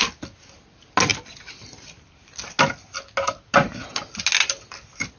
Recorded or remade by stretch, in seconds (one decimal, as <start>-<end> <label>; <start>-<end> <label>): 0.0-5.2 recorded